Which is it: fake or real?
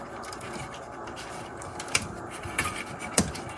fake